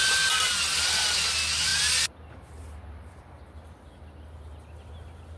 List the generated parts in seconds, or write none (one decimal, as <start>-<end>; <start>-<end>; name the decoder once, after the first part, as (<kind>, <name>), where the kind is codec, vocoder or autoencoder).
none